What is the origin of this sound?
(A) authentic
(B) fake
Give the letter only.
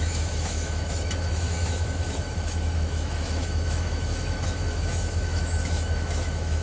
B